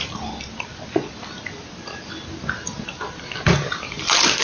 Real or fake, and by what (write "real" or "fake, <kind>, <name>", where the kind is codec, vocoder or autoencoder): real